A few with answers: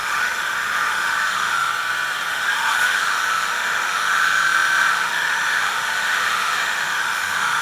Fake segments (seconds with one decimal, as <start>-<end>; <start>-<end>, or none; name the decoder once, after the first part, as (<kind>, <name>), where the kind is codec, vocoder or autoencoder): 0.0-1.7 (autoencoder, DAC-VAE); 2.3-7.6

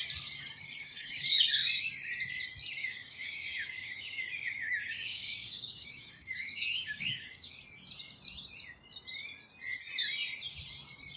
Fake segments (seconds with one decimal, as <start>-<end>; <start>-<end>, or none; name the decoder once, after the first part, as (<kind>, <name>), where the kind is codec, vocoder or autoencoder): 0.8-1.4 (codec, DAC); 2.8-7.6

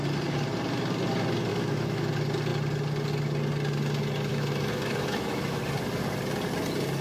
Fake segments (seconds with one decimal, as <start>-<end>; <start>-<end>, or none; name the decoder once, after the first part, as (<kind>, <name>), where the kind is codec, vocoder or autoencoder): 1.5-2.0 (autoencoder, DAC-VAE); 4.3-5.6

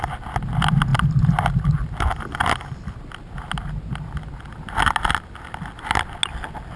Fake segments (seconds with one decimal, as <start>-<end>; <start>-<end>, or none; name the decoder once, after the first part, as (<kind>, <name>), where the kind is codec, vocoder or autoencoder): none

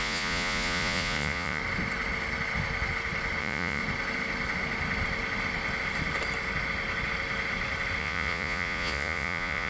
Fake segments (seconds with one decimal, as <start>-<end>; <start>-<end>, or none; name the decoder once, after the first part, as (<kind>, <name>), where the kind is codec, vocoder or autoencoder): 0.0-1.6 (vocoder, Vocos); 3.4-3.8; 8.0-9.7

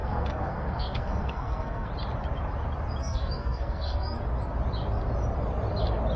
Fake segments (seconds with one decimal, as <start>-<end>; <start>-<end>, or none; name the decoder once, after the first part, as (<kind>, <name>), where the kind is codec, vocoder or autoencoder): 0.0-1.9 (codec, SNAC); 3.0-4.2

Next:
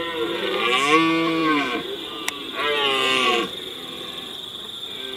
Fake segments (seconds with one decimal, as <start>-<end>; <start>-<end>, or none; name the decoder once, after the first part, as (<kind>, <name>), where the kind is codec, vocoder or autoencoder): 1.4-4.5 (vocoder, BigVGAN v2)

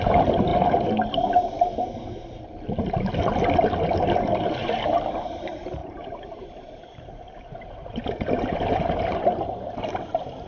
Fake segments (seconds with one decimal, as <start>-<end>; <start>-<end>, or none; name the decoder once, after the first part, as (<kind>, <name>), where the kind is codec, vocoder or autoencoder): 0.0-0.5 (vocoder, BigVGAN v2); 4.4-10.5